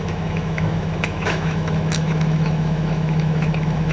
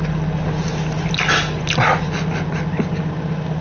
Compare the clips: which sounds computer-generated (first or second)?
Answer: first